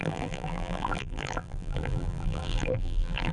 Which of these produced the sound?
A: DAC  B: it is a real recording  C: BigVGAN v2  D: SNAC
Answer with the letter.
C